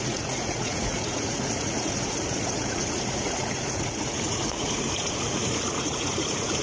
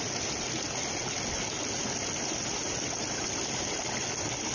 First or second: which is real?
second